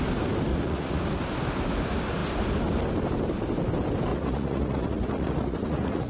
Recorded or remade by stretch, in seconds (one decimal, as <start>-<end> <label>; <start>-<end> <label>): 0.0-0.5 recorded; 0.5-1.0 remade; 1.0-4.1 recorded; 4.1-6.1 remade